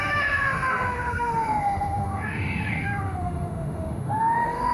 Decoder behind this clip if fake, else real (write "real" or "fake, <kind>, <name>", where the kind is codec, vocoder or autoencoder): fake, autoencoder, DAC-VAE